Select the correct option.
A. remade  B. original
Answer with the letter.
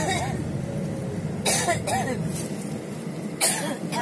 B